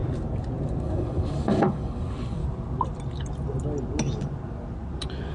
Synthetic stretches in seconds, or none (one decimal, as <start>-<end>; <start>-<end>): 0.8-2.4